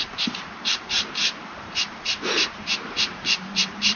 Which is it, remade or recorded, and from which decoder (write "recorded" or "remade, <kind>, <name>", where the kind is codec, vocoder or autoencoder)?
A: remade, vocoder, BigVGAN v2